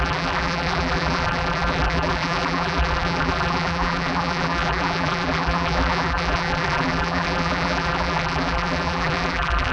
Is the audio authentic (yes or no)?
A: no